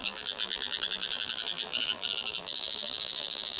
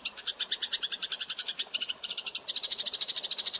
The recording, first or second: second